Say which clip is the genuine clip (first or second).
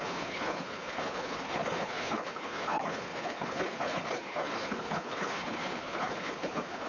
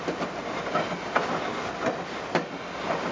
second